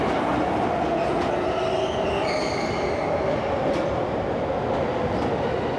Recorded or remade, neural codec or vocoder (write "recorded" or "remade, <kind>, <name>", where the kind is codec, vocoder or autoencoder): recorded